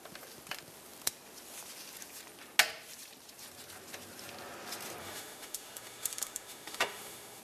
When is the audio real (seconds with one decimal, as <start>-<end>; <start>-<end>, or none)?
0.0-5.0